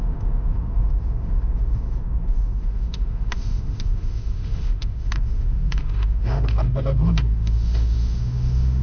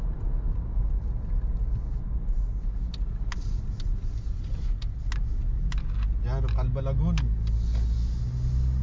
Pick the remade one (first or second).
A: first